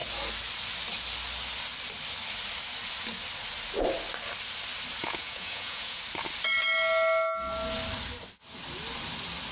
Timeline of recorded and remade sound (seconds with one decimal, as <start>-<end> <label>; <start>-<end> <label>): 0.0-5.0 recorded; 5.0-6.0 remade; 6.0-9.5 recorded